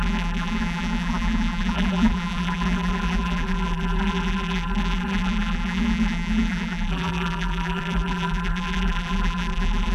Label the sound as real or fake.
fake